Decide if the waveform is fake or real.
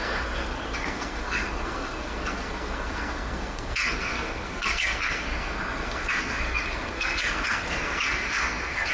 fake